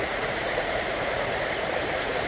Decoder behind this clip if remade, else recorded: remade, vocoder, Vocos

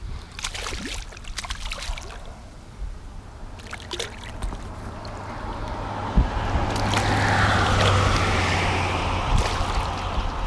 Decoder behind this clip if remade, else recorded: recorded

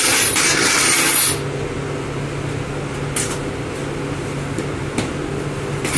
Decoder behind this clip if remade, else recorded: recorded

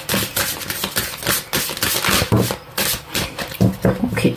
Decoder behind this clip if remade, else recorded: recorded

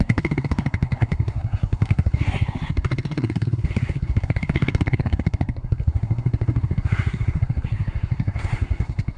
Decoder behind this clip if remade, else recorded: remade, codec, SNAC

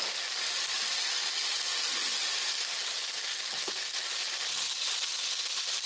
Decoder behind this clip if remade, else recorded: recorded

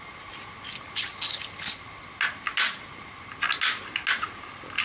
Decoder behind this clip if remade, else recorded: recorded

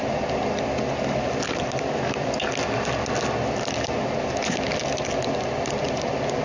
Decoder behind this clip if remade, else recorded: recorded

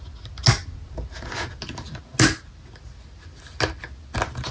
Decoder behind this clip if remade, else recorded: recorded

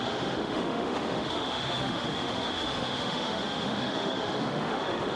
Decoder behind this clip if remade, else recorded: remade, autoencoder, DAC-VAE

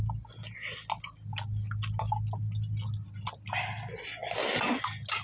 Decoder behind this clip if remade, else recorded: recorded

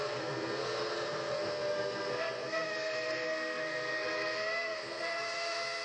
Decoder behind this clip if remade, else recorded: remade, codec, SNAC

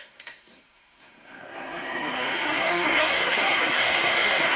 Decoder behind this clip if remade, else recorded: remade, codec, SNAC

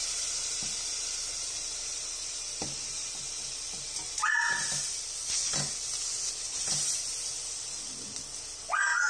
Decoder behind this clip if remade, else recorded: recorded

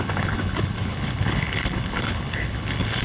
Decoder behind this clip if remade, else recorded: remade, codec, HILCodec